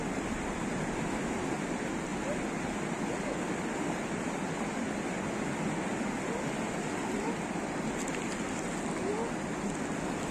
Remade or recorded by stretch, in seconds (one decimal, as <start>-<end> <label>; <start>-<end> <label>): 0.0-10.3 recorded

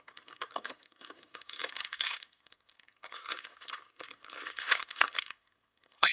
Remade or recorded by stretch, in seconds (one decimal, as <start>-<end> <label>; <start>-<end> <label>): 0.0-6.1 remade

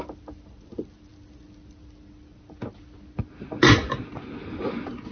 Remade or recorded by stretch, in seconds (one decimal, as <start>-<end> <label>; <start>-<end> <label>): 0.0-5.1 recorded

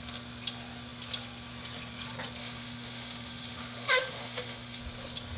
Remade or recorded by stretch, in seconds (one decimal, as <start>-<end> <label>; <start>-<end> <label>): 0.0-2.4 recorded; 2.4-4.8 remade; 4.8-5.4 recorded

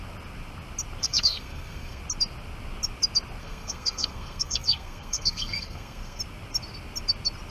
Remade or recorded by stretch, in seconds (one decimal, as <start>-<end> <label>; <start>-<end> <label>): 0.0-1.0 recorded; 1.0-2.0 remade; 2.0-3.4 recorded; 3.4-6.2 remade; 6.2-7.5 recorded

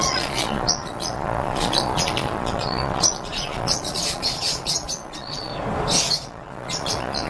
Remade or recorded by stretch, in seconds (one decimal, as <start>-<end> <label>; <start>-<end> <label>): 0.0-5.5 remade; 5.5-6.1 recorded; 6.1-7.3 remade

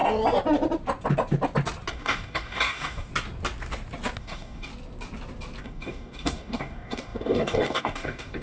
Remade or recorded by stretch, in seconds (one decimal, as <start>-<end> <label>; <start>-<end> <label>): 0.0-1.9 recorded; 1.9-3.1 remade; 3.1-4.2 recorded; 4.2-4.7 remade; 4.7-5.6 recorded; 5.6-8.4 remade